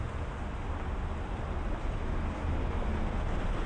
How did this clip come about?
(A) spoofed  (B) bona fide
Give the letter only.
B